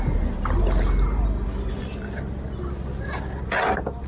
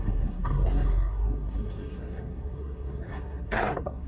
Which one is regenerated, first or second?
second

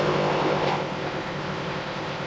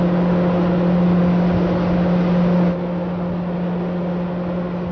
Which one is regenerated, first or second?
first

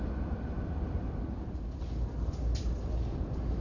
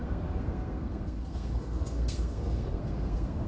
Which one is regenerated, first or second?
second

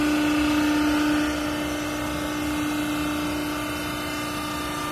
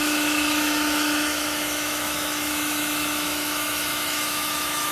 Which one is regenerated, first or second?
second